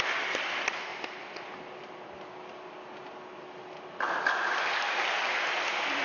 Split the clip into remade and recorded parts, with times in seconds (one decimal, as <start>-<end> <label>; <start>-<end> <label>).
0.0-0.9 remade; 0.9-3.9 recorded; 3.9-6.0 remade